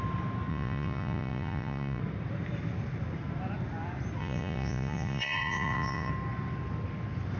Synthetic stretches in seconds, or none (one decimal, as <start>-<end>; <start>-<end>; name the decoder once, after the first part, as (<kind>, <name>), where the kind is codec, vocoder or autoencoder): 0.5-2.0 (vocoder, Vocos); 4.2-6.1